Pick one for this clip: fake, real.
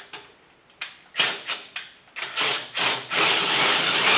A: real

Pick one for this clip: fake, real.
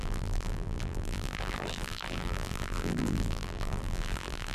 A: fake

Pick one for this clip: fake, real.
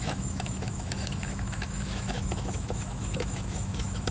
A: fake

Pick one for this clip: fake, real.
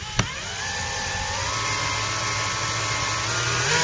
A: real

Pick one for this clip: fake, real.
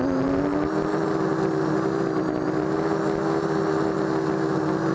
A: real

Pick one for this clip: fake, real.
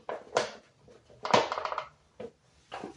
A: real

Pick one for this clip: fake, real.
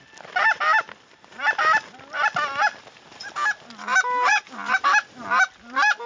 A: real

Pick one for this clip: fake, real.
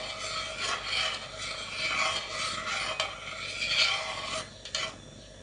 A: real